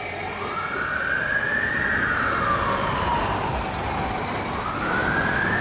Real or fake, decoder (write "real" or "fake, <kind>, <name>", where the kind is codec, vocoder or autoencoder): real